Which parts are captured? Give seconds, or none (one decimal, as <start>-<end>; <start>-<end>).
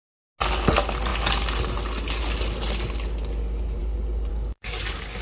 0.0-4.3